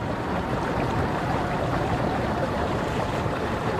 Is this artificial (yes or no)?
yes